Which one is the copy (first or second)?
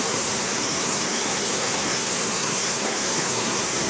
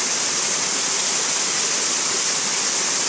first